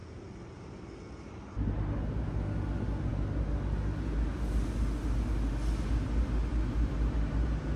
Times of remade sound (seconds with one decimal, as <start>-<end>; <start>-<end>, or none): none